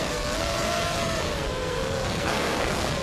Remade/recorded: remade